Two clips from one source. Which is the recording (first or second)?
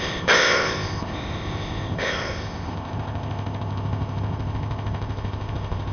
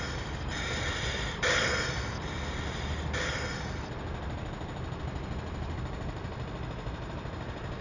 second